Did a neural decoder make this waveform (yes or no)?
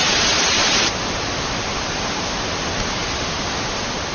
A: no